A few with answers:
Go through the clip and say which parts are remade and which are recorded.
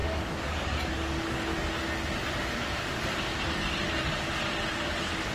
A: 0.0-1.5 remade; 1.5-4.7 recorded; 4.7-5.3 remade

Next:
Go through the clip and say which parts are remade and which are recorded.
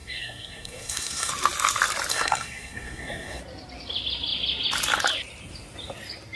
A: 0.0-1.3 remade; 1.3-2.1 recorded; 2.1-3.4 remade; 3.4-6.4 recorded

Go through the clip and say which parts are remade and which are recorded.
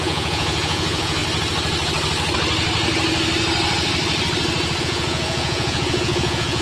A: 0.0-1.2 remade; 1.2-4.8 recorded; 4.8-6.6 remade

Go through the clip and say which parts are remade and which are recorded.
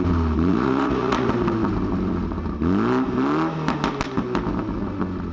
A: 0.0-0.5 recorded; 0.5-1.3 remade; 1.3-5.3 recorded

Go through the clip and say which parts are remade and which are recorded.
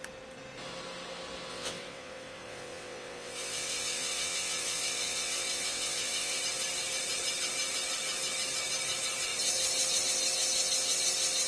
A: 0.0-1.5 recorded; 1.5-6.4 remade; 6.4-11.5 recorded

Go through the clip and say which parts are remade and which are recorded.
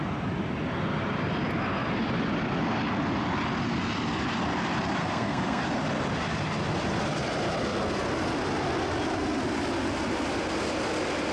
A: 0.0-5.0 recorded; 5.0-5.6 remade; 5.6-11.3 recorded